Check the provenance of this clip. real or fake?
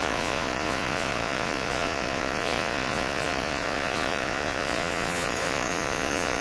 fake